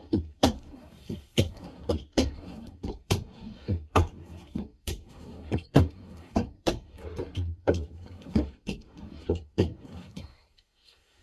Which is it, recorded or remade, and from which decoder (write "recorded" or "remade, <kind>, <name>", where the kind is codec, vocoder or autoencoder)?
remade, codec, SNAC